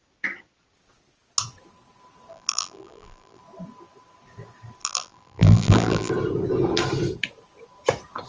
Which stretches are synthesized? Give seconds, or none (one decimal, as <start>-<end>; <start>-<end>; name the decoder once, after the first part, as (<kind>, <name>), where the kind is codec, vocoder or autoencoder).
2.3-3.4 (vocoder, BigVGAN v2); 4.8-6.1